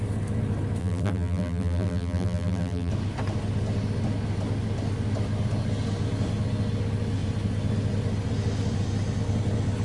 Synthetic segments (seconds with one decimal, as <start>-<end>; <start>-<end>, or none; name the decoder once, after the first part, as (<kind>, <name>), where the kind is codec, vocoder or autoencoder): 0.8-2.9 (vocoder, BigVGAN v2)